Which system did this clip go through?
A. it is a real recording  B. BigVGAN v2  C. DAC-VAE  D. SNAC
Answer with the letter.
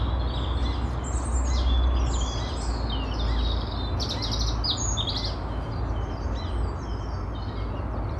A